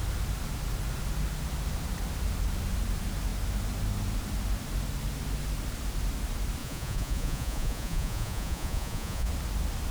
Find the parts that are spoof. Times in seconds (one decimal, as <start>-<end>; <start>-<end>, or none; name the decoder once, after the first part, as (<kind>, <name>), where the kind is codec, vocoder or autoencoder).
6.6-9.3 (vocoder, Vocos)